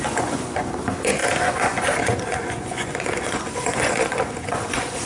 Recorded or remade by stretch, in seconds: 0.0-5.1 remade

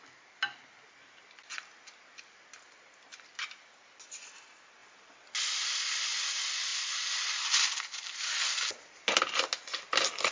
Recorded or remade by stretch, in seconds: 0.0-10.3 recorded

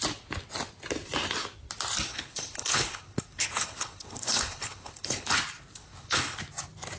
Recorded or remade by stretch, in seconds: 0.0-2.1 recorded; 2.1-5.3 remade; 5.3-5.8 recorded; 5.8-6.4 remade; 6.4-7.0 recorded

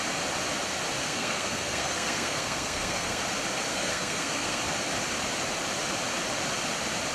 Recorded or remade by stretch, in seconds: 0.0-1.0 recorded; 1.0-3.2 remade; 3.2-3.7 recorded; 3.7-4.6 remade; 4.6-7.1 recorded

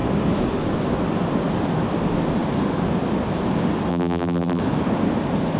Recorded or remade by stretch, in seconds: 0.0-3.9 recorded; 3.9-4.6 remade; 4.6-5.6 recorded

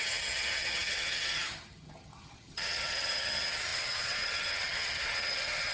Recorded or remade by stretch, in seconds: 0.0-5.7 remade

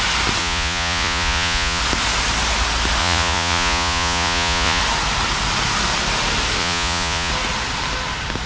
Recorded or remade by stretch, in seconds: 0.0-0.4 recorded; 0.4-1.8 remade; 1.8-3.0 recorded; 3.0-4.8 remade; 4.8-6.6 recorded; 6.6-7.3 remade; 7.3-8.5 recorded

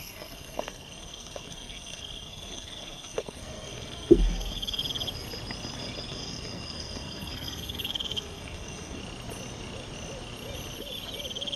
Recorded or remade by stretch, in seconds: 0.0-4.8 remade; 4.8-6.1 recorded; 6.1-9.0 remade; 9.0-11.6 recorded